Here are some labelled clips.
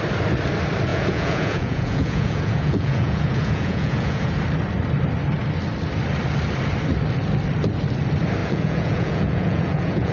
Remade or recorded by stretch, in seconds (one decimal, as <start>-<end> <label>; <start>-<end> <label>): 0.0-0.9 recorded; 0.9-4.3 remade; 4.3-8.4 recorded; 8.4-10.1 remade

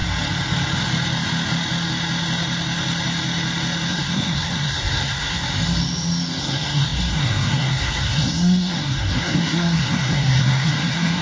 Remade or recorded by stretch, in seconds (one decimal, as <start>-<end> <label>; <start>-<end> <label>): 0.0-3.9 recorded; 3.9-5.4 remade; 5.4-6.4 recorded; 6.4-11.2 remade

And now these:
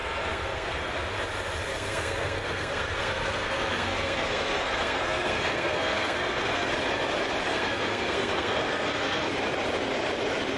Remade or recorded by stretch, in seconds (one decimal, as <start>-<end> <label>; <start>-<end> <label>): 0.0-0.9 remade; 0.9-1.7 recorded; 1.7-6.7 remade; 6.7-7.5 recorded; 7.5-9.3 remade; 9.3-10.6 recorded

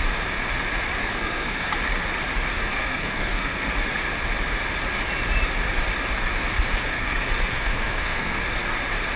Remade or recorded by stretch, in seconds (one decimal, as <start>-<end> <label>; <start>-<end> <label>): 0.0-1.0 recorded; 1.0-1.7 remade; 1.7-2.7 recorded; 2.7-3.7 remade; 3.7-6.9 recorded; 6.9-8.4 remade; 8.4-9.2 recorded